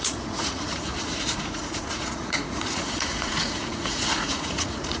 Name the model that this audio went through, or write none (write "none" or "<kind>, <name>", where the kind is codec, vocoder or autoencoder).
vocoder, Vocos